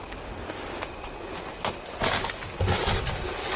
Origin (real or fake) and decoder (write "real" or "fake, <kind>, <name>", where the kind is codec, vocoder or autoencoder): real